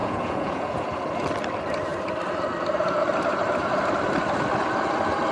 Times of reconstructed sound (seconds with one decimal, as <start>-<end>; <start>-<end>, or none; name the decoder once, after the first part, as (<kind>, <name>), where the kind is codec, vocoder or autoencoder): 0.0-0.9 (vocoder, Vocos)